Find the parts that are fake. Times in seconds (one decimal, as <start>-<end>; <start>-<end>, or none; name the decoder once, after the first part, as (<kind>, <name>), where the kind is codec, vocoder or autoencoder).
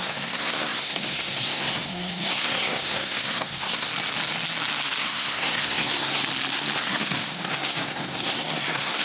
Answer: 0.0-3.9 (codec, SNAC); 5.0-6.2; 6.8-9.0